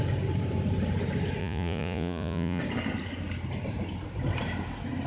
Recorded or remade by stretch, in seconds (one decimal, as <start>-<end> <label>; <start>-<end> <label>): 0.0-1.4 recorded; 1.4-2.6 remade; 2.6-5.1 recorded